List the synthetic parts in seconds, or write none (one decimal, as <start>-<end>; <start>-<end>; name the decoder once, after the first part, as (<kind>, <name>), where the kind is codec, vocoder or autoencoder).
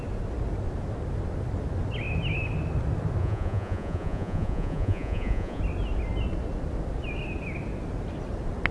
3.2-5.6 (vocoder, Vocos)